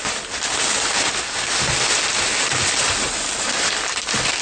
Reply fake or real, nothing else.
real